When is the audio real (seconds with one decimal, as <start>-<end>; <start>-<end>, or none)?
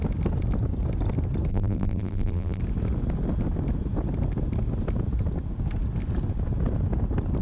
0.0-1.5; 2.6-7.4